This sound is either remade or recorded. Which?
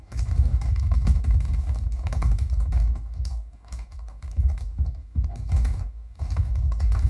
remade